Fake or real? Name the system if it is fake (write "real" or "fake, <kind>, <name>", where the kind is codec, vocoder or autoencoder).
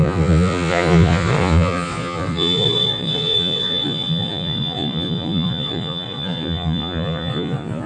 fake, vocoder, Vocos